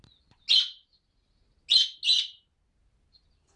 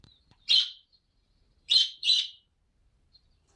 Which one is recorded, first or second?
first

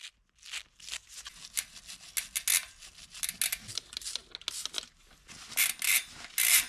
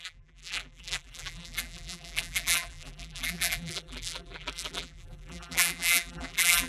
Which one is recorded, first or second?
first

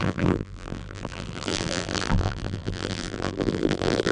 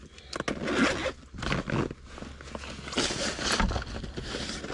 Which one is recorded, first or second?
second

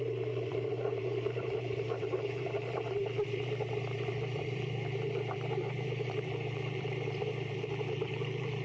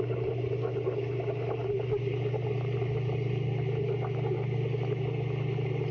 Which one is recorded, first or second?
second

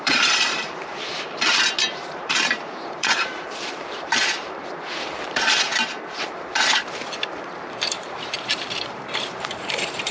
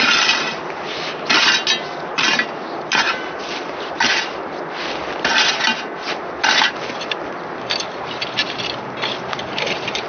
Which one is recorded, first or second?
second